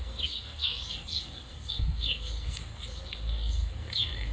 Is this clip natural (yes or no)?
no